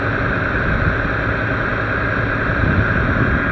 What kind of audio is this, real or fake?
real